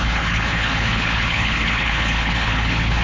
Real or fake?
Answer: fake